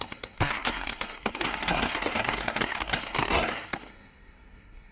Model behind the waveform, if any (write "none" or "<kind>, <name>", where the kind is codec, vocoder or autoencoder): codec, SNAC